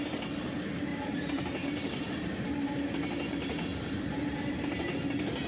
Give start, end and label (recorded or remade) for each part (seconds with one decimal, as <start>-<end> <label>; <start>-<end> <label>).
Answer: 0.0-0.9 recorded; 0.9-2.5 remade; 2.5-3.7 recorded; 3.7-4.7 remade; 4.7-5.5 recorded